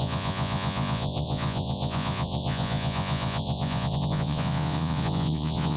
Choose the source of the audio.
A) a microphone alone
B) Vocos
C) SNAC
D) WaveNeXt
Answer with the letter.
B